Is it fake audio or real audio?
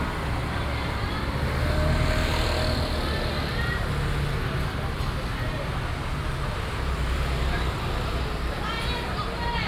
real